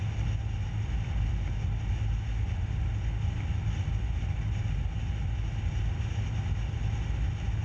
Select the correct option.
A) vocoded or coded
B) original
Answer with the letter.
B